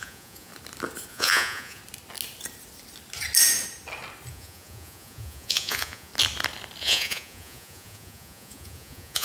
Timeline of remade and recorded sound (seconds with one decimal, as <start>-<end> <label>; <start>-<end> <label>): 0.0-0.5 remade; 0.5-1.1 recorded; 1.1-1.8 remade; 1.8-4.3 recorded; 4.3-6.1 remade; 6.1-6.8 recorded; 6.8-9.2 remade